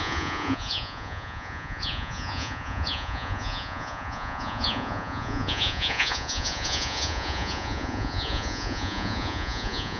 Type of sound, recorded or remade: remade